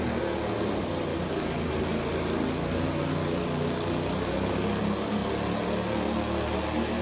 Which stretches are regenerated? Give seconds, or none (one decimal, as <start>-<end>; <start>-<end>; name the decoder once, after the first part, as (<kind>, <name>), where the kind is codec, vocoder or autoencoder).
1.1-1.7 (codec, DAC); 3.2-4.8